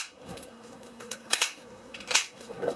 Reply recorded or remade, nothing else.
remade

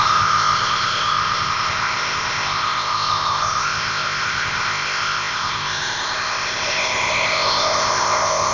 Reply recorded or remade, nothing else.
remade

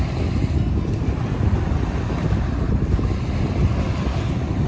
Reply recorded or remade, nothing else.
recorded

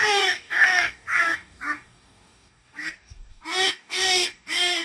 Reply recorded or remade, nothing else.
remade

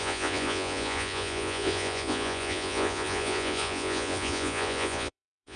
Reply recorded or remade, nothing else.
remade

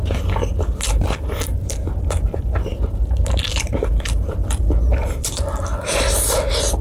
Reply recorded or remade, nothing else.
remade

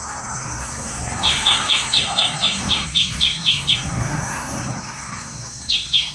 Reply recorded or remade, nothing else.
remade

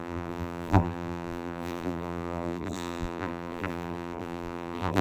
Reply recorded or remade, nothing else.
remade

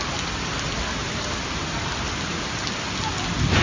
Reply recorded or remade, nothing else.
recorded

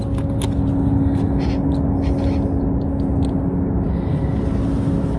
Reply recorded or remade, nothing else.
recorded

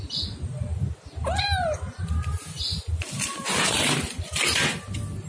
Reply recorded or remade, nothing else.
recorded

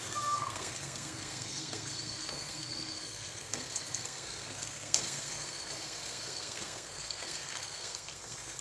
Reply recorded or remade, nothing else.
remade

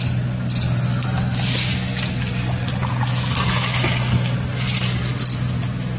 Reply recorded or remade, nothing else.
recorded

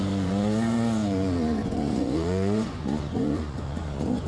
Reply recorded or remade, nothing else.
remade